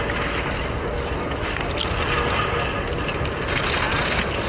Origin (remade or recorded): recorded